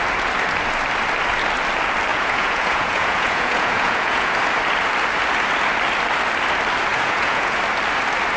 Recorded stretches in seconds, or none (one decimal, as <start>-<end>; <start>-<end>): 0.0-2.1; 4.3-6.9; 7.6-8.4

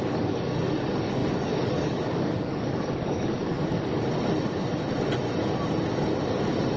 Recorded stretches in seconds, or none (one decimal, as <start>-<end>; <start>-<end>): 3.6-6.8

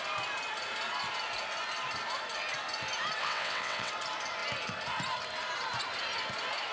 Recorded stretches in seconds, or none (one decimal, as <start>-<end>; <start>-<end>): 0.0-3.2; 3.9-6.7

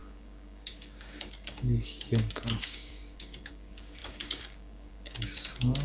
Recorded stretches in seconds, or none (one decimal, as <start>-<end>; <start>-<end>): none